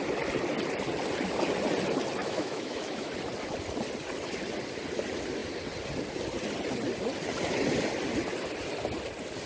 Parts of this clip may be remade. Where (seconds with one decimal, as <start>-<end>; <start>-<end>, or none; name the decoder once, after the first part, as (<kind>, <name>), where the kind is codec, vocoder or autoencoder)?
2.2-3.1 (autoencoder, DAC-VAE)